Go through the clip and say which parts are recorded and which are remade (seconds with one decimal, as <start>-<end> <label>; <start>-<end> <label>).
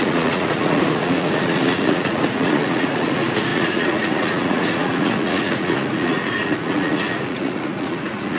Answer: 0.0-8.4 remade